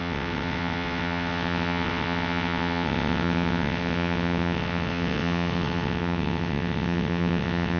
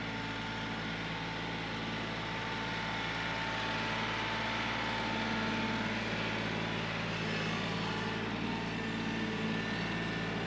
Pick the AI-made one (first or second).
first